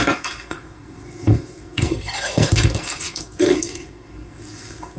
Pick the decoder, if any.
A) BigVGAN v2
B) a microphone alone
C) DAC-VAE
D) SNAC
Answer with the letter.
D